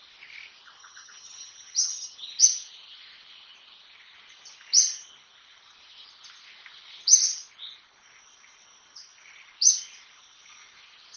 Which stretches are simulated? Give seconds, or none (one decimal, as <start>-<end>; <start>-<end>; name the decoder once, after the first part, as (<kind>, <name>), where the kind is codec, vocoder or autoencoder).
0.8-2.4 (vocoder, HiFi-GAN)